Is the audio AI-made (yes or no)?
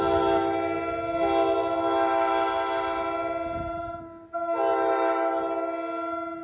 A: no